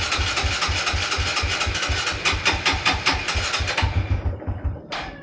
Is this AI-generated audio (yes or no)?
no